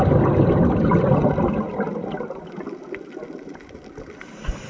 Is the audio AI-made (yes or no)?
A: no